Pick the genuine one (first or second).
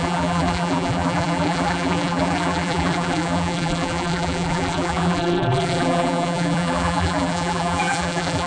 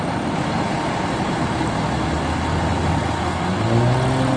second